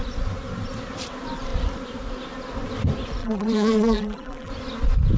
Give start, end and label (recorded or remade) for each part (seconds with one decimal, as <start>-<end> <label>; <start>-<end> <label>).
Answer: 0.0-3.2 recorded; 3.2-4.5 remade; 4.5-5.2 recorded